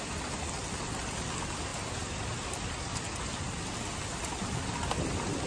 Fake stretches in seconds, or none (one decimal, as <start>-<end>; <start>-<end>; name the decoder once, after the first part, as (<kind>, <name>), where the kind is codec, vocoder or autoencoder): none